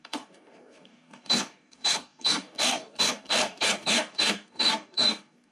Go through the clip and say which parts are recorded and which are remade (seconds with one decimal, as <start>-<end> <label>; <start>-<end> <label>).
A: 0.0-5.5 remade